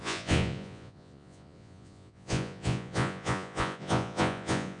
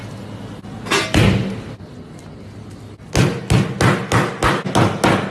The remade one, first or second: first